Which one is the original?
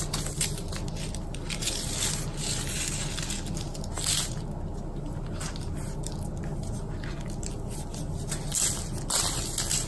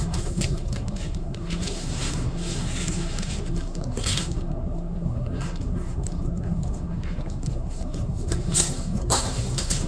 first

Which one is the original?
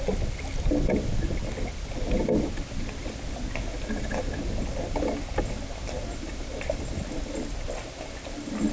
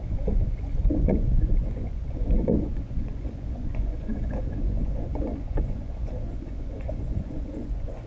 first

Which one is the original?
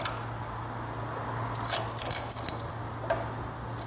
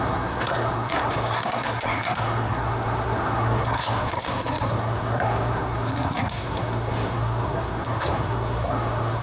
first